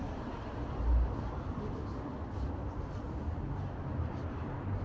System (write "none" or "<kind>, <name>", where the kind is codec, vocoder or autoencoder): none